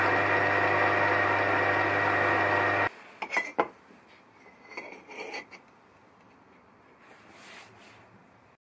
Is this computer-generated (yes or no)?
no